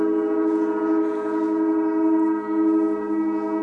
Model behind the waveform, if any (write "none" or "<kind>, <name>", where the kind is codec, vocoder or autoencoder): none